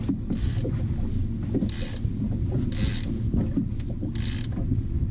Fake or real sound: real